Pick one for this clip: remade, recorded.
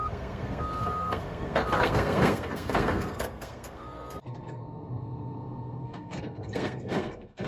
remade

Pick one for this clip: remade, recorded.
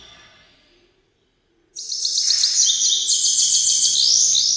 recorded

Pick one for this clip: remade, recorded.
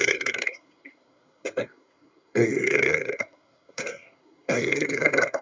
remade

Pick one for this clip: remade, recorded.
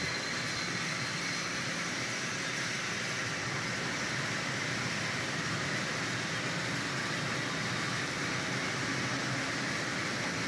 recorded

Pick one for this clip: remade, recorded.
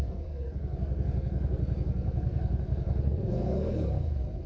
remade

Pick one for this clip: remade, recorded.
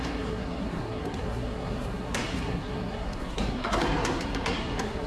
remade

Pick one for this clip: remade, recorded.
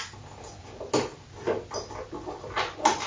recorded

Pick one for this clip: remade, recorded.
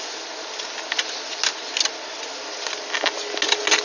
recorded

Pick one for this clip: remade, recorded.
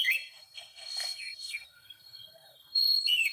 remade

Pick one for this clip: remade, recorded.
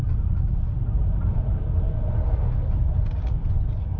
recorded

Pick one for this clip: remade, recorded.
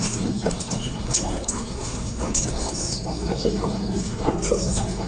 remade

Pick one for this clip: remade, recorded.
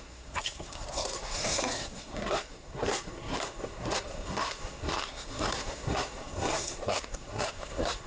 remade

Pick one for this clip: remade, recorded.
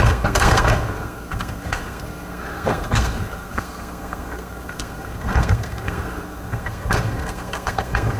remade